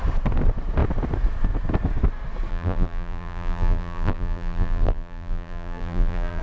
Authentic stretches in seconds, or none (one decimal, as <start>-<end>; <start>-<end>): 0.0-2.5